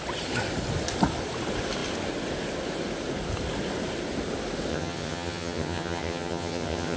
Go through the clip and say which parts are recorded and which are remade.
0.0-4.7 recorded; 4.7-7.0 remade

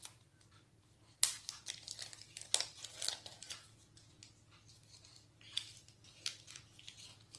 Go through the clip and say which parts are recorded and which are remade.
0.0-7.4 recorded

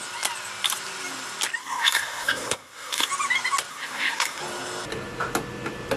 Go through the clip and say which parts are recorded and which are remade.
0.0-1.6 recorded; 1.6-3.1 remade; 3.1-3.7 recorded; 3.7-4.4 remade; 4.4-6.0 recorded

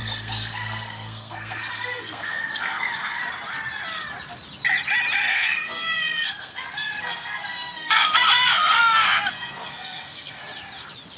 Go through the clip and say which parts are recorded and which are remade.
0.0-3.2 remade; 3.2-5.3 recorded; 5.3-10.4 remade; 10.4-11.2 recorded